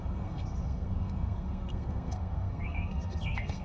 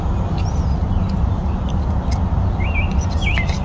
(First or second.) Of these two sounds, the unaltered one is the second